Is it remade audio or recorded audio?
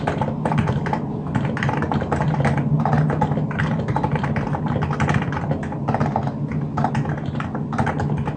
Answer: recorded